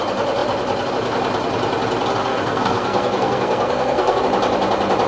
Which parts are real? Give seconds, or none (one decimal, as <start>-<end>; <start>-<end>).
0.0-2.3; 4.2-5.1